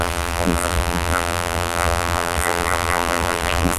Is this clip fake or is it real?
fake